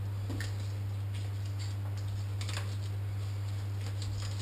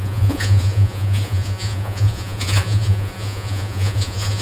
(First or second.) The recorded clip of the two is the first